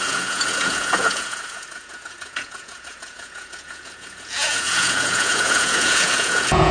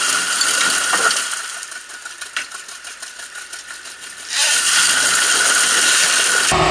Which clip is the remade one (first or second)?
first